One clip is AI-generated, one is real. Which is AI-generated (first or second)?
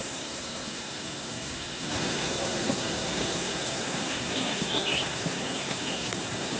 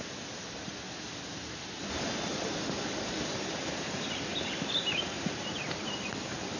first